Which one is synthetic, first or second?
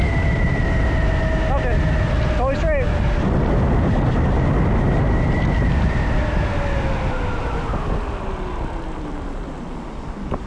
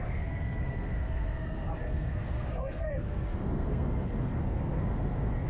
second